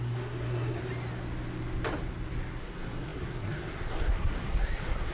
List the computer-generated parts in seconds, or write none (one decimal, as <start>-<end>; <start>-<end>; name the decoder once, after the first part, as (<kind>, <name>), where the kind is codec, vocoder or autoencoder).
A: 0.0-0.8 (codec, SNAC); 2.6-5.1